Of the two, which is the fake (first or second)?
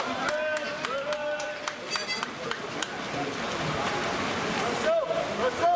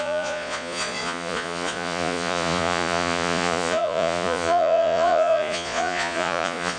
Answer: second